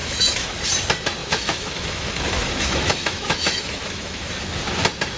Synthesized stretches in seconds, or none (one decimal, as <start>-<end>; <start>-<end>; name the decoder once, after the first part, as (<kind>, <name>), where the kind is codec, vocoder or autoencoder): 0.0-0.6 (autoencoder, DAC-VAE); 1.2-4.3